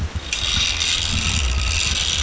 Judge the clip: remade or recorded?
recorded